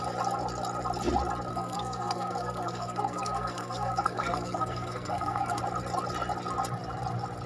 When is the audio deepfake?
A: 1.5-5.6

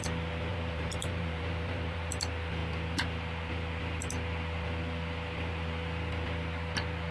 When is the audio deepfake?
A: 0.5-2.1

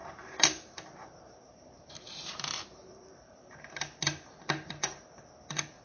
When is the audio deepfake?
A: 0.0-3.5

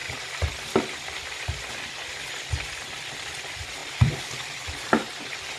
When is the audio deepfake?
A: 0.0-1.7; 3.8-4.9

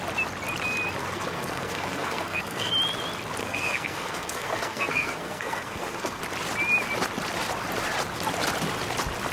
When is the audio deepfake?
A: 1.0-2.7; 3.4-6.2

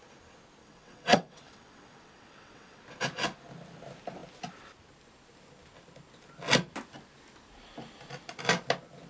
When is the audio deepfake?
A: 0.6-2.8

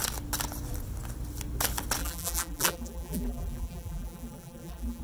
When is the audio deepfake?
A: 2.0-5.0

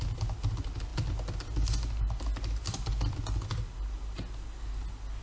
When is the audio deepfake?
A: none